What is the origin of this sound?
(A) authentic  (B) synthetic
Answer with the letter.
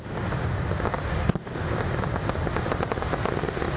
A